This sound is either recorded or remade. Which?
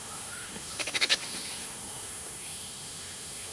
remade